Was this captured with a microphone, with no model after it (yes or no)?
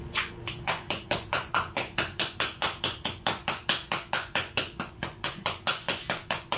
no